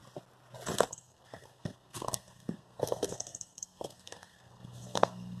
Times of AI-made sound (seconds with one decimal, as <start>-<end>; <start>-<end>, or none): 0.9-5.4